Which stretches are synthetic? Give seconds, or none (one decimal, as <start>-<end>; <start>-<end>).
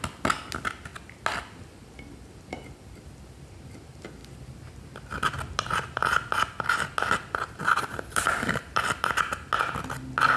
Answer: 7.6-9.3